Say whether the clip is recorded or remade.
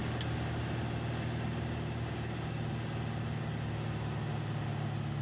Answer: recorded